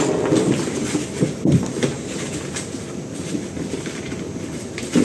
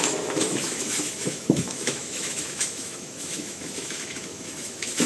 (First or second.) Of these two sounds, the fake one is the second